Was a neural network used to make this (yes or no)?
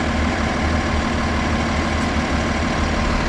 no